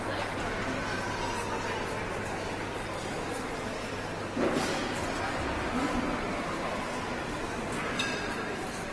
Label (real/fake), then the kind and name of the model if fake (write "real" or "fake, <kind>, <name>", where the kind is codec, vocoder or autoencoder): real